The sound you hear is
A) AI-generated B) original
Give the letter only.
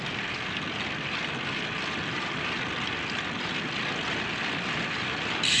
B